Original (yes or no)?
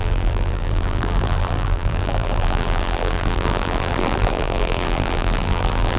no